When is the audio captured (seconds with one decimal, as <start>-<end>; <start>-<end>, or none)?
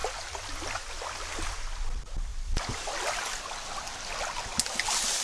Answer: 0.0-5.2